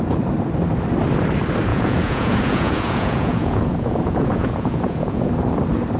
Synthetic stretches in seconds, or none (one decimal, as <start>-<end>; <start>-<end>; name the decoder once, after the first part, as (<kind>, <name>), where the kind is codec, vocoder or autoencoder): 1.7-5.3 (vocoder, Vocos)